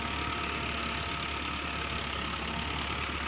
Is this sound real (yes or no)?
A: yes